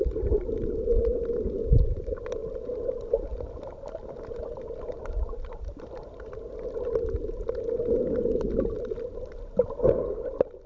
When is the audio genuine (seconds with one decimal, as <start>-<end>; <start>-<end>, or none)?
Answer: 0.0-10.7